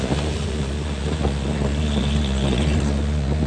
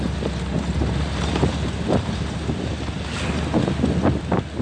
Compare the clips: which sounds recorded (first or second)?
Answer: second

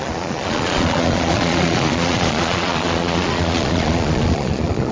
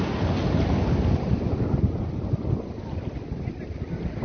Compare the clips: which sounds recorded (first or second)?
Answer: second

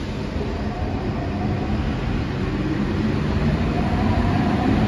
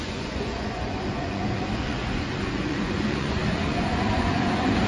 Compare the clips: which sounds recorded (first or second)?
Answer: first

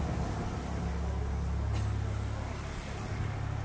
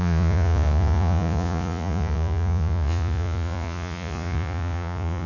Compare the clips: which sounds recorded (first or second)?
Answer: first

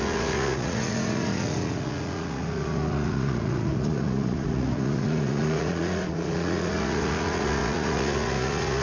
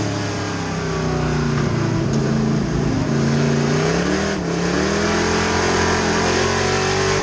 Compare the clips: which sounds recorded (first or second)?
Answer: second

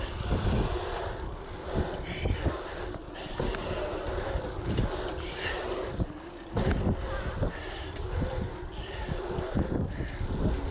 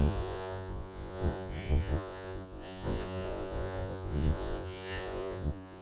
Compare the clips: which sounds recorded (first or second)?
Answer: first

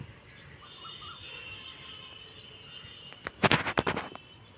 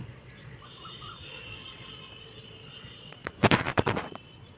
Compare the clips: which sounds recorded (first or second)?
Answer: first